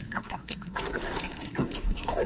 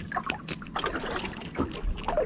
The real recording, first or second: second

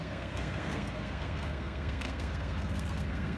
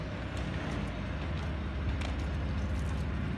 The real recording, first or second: second